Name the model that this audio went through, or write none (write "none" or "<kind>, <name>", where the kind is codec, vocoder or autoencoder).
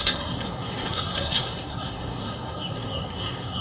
codec, SNAC